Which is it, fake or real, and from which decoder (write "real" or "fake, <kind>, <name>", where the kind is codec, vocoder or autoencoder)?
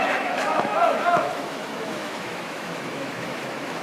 fake, autoencoder, DAC-VAE